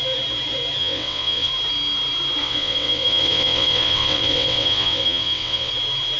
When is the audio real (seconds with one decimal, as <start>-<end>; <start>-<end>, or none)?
0.0-0.8; 1.5-2.4; 5.7-6.2